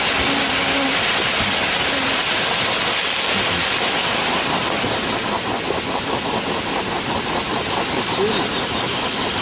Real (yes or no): yes